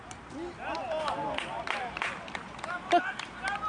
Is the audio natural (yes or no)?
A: yes